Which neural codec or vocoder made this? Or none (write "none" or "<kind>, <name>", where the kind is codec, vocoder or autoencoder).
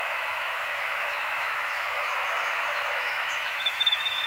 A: autoencoder, DAC-VAE